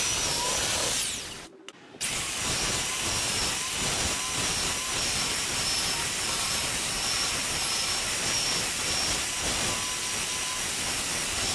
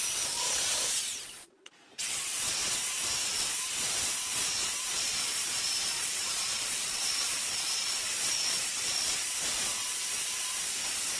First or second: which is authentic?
first